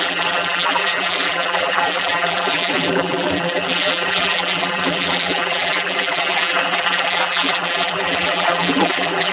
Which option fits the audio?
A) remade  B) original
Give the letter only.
A